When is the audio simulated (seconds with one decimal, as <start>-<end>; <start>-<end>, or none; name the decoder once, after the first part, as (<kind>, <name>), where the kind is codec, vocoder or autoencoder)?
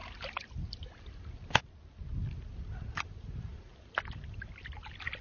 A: none